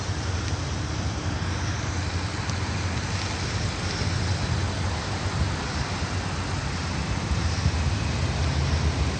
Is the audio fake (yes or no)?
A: no